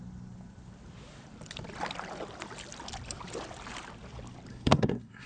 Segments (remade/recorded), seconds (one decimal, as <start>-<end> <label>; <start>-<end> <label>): 0.0-4.5 recorded; 4.5-5.3 remade